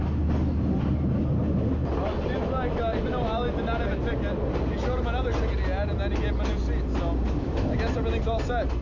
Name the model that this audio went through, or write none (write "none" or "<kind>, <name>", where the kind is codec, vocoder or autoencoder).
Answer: none